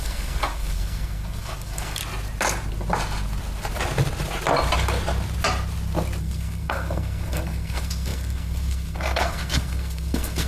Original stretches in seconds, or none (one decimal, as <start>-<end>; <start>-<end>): 2.0-6.2